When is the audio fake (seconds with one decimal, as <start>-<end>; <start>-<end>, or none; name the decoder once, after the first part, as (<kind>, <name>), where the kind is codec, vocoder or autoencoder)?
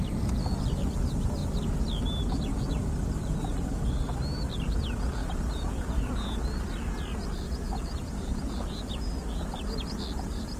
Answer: none